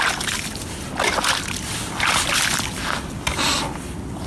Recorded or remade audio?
recorded